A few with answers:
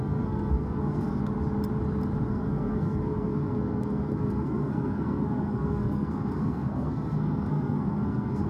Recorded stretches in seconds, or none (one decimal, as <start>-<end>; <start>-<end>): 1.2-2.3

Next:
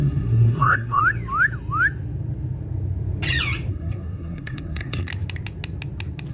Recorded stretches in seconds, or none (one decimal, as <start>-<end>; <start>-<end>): 1.0-3.7; 5.1-6.3

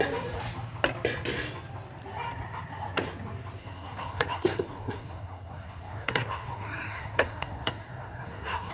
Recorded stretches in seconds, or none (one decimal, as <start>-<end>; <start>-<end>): 0.0-3.6

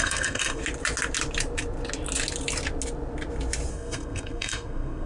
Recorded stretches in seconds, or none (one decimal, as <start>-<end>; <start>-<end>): 0.6-3.7

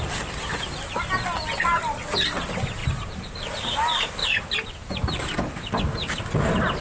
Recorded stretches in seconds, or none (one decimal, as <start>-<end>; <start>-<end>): 0.0-2.8; 3.7-4.2; 4.9-6.8

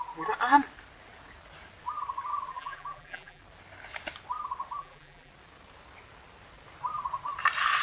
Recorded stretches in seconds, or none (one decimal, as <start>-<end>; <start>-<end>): 0.0-2.5; 3.4-4.8; 5.3-7.8